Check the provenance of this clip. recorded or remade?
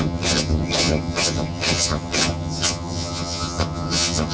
remade